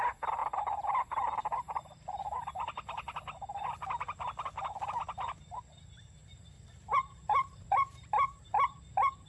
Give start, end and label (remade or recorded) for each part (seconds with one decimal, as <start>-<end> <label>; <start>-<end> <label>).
0.0-0.4 recorded; 0.4-2.4 remade; 2.4-6.2 recorded; 6.2-8.5 remade; 8.5-9.3 recorded